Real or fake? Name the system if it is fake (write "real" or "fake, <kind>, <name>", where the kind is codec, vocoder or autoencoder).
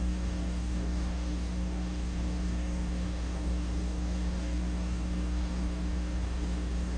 fake, codec, DAC